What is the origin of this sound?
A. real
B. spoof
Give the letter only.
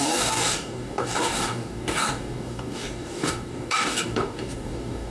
B